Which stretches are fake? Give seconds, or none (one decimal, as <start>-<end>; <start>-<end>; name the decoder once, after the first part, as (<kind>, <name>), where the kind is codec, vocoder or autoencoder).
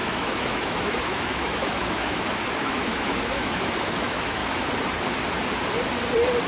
0.0-4.4 (autoencoder, DAC-VAE)